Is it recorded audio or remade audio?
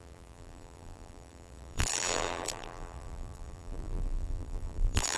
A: remade